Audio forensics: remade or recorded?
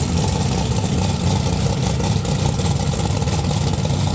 recorded